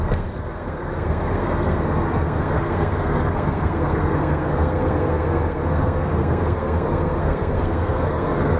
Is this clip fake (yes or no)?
yes